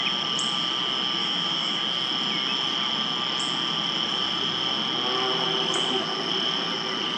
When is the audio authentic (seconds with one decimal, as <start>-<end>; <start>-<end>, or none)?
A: 0.0-1.2; 1.8-7.2